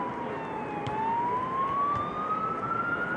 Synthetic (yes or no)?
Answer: no